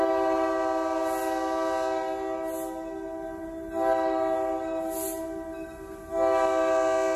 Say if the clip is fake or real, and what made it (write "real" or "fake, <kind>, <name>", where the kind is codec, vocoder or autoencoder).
real